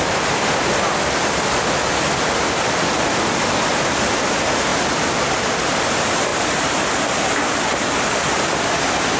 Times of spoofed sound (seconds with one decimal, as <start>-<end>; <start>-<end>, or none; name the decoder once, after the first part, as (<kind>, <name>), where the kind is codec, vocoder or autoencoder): 4.7-5.6 (vocoder, BigVGAN v2); 6.3-7.2